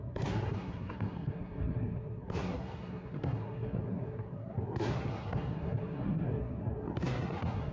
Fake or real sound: fake